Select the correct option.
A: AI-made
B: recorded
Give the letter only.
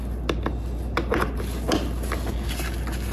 B